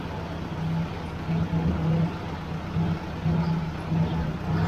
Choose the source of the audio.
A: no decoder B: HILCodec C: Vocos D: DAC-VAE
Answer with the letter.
A